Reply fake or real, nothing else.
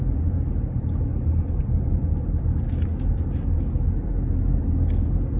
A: real